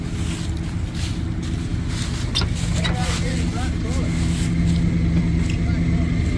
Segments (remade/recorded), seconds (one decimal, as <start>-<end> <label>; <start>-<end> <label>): 0.0-6.4 recorded